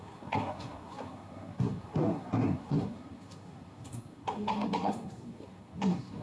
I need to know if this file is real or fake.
fake